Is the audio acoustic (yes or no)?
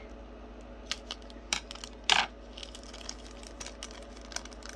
yes